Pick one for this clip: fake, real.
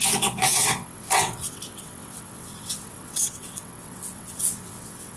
fake